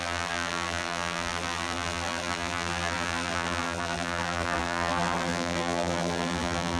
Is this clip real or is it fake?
fake